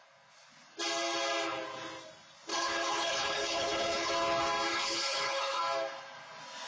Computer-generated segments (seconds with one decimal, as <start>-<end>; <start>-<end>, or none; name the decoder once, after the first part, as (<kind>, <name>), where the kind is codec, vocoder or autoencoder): 2.5-4.1 (codec, HILCodec); 4.7-5.6